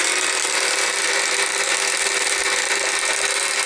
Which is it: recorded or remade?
recorded